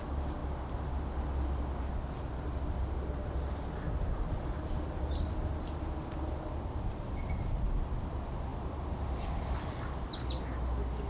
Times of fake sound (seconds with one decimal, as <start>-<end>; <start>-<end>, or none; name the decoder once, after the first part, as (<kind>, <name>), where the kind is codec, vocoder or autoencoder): none

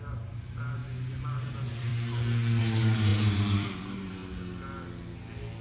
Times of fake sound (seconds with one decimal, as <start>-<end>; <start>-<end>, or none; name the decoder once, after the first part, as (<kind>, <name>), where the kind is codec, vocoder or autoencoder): 0.0-0.8 (vocoder, BigVGAN v2); 1.4-1.9; 2.6-4.2

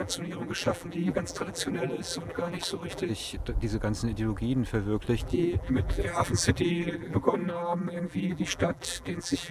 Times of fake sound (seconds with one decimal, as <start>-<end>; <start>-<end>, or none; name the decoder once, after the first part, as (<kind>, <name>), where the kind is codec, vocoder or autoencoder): 0.0-3.1 (vocoder, BigVGAN v2); 5.2-9.5

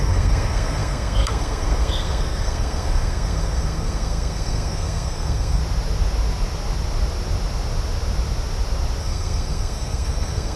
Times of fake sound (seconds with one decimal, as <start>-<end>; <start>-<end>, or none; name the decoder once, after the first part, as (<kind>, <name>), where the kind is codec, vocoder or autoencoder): 0.0-5.6 (codec, SNAC); 9.0-10.6